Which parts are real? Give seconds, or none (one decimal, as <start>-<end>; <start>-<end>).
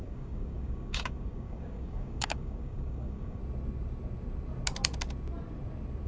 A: 3.4-6.1